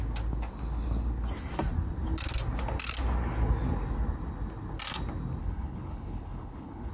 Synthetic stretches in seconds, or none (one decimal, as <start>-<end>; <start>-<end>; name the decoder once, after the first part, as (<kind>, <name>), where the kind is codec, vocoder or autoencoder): 5.4-6.9 (codec, HILCodec)